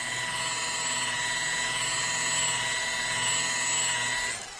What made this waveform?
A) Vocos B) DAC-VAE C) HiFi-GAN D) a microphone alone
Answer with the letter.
D